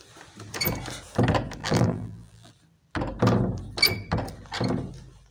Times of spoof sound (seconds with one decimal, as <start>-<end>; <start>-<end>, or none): 1.6-2.5